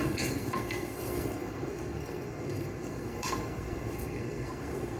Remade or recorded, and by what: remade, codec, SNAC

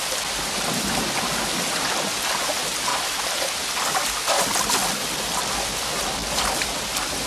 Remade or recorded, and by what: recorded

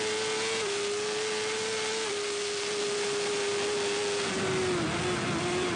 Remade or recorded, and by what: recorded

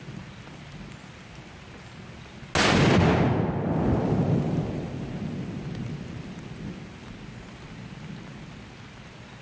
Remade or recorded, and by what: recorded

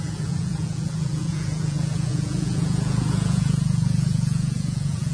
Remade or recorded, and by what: remade, vocoder, Vocos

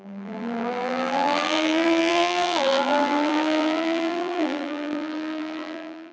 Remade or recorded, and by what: remade, vocoder, BigVGAN v2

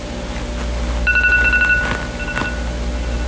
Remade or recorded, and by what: recorded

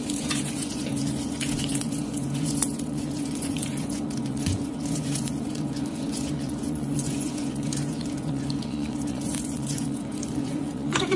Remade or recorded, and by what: remade, vocoder, Vocos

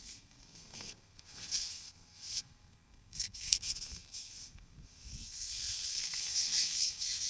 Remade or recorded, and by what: remade, codec, SNAC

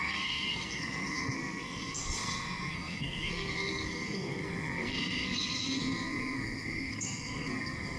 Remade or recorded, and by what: remade, codec, SNAC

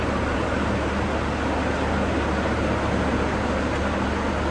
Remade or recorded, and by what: recorded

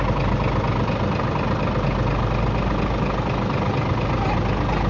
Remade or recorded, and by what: recorded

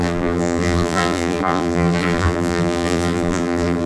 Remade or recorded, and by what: remade, vocoder, BigVGAN v2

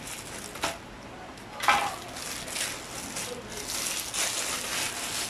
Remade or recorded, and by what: recorded